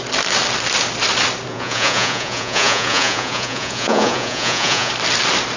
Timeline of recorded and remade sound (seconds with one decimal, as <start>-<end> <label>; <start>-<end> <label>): 0.0-1.5 recorded; 1.5-4.9 remade; 4.9-5.6 recorded